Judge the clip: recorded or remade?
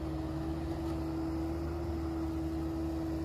recorded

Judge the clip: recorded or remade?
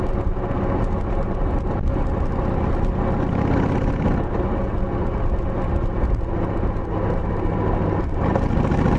recorded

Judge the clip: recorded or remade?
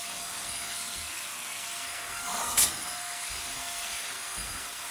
remade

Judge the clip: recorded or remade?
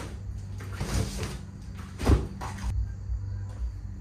recorded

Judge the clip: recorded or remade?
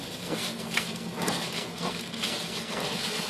remade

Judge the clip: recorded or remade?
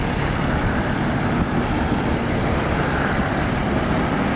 recorded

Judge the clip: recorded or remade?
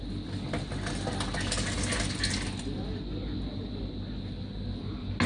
recorded